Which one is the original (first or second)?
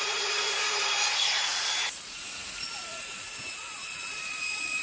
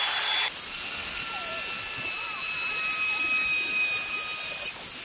second